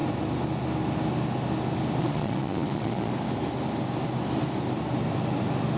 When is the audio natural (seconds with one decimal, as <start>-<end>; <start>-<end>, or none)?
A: 0.0-2.0; 3.1-5.8